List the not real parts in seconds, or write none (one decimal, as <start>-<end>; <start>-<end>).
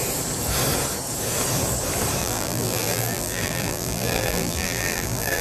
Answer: 2.2-5.4